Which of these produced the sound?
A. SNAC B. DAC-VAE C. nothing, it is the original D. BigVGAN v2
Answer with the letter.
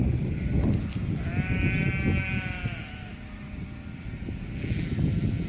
C